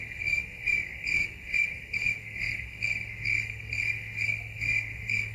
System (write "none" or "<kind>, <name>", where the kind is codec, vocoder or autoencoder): codec, SNAC